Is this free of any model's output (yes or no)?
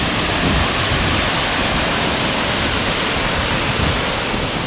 yes